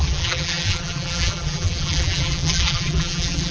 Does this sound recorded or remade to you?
remade